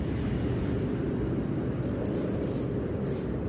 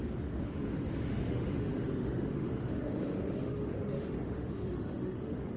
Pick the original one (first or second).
first